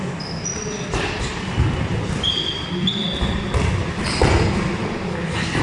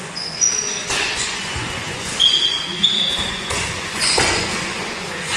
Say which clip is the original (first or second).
first